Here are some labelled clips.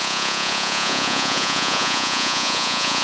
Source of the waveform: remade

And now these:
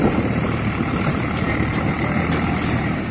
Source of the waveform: remade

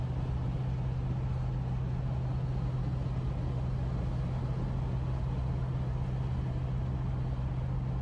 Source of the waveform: recorded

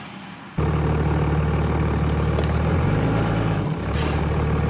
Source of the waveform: remade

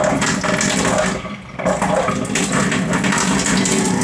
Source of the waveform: recorded